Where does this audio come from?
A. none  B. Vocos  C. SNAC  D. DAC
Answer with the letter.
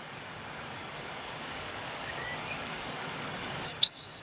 D